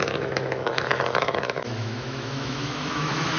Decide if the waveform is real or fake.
fake